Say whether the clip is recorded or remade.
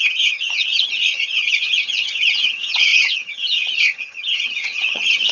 remade